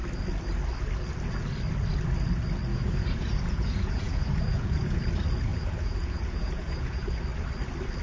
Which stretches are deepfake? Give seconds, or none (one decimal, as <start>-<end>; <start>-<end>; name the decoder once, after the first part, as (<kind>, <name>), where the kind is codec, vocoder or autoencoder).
2.7-5.1 (vocoder, Vocos); 5.5-7.2